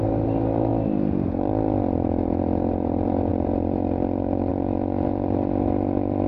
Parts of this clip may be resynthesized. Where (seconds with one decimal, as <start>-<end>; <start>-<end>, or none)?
0.0-0.7; 1.9-6.3